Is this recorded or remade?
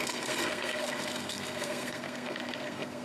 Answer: remade